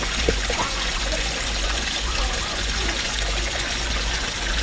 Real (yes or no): no